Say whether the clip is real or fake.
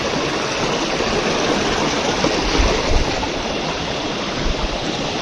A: real